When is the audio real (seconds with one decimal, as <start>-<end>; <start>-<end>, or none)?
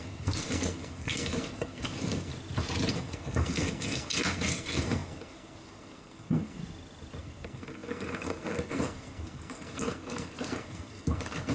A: 2.3-2.9; 6.6-7.2